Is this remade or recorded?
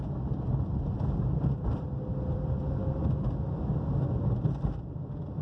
recorded